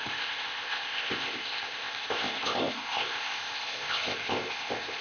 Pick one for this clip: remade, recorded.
remade